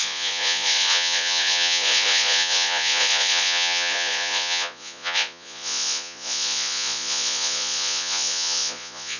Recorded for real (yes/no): no